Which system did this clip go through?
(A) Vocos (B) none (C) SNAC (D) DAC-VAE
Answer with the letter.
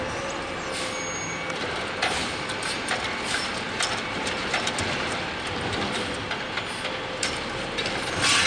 B